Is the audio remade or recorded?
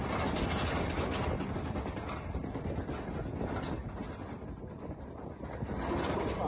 recorded